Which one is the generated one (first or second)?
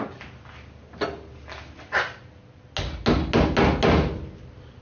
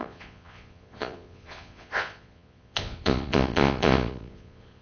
second